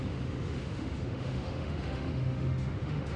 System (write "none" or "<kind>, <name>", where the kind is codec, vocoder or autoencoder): autoencoder, DAC-VAE